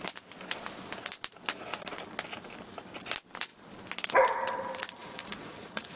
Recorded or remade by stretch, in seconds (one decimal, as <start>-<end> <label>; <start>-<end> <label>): 0.0-5.0 recorded; 5.0-6.0 remade